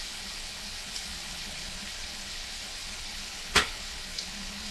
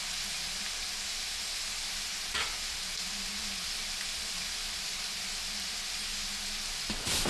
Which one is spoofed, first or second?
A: first